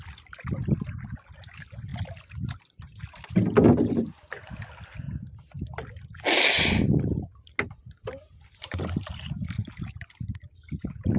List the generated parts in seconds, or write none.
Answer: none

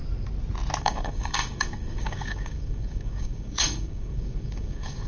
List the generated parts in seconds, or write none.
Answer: 0.8-5.1 (codec, DAC)

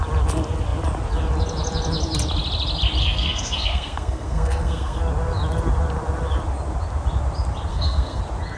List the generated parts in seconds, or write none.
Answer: 3.0-5.0 (codec, SNAC); 7.7-8.2